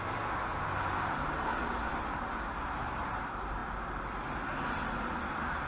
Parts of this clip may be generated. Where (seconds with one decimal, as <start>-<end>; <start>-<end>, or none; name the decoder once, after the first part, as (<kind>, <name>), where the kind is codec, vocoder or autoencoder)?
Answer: none